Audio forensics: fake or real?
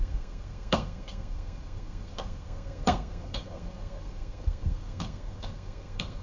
fake